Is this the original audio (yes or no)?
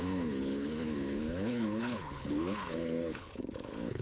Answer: no